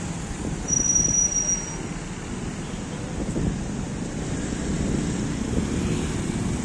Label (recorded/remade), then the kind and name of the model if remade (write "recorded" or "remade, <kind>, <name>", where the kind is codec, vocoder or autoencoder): recorded